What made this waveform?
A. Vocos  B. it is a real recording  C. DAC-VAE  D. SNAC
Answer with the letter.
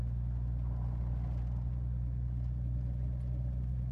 B